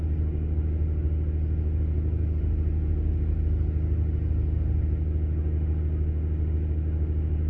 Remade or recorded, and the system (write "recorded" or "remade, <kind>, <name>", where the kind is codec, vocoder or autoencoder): recorded